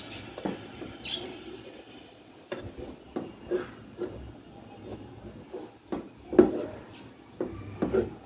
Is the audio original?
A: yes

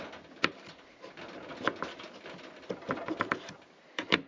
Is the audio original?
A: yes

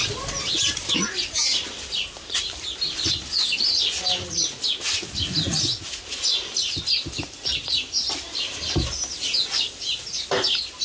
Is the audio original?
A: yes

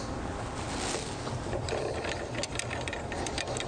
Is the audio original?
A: yes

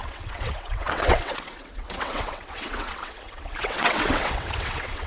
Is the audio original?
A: no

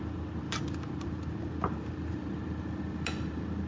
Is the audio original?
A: yes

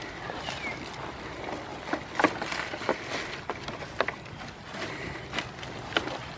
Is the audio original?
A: yes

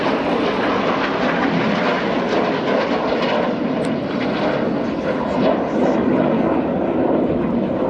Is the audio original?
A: yes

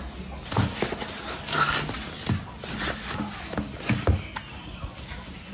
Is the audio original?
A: yes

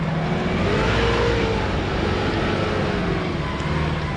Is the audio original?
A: yes